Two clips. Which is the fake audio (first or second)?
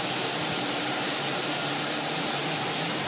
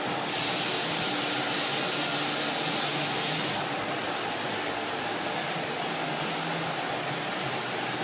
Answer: first